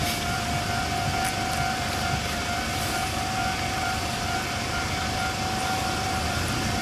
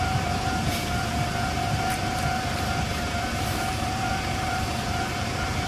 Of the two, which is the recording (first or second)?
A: first